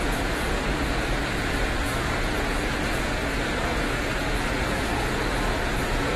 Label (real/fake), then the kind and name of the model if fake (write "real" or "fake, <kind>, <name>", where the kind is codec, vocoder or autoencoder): fake, vocoder, Vocos